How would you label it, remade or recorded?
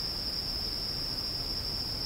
recorded